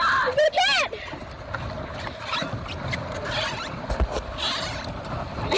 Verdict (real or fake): real